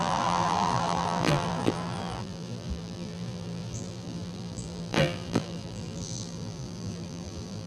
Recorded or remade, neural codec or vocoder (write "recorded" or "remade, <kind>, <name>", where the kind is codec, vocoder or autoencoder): remade, vocoder, BigVGAN v2